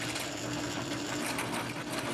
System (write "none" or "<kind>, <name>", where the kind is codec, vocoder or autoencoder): none